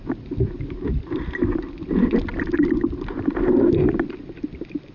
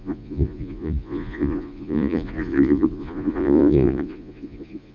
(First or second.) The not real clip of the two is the second